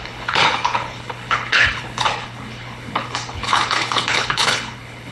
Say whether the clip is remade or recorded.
remade